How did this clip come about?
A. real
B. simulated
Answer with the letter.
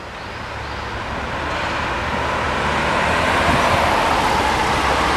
A